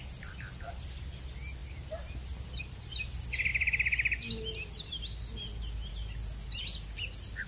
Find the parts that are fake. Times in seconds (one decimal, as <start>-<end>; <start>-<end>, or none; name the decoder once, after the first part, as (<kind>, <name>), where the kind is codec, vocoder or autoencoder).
none